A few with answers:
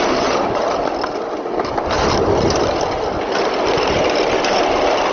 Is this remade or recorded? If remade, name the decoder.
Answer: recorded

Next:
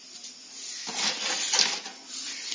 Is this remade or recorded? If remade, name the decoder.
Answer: recorded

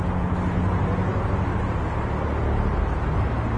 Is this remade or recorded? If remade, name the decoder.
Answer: recorded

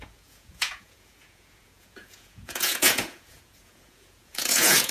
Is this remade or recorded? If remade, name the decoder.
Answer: remade, vocoder, Vocos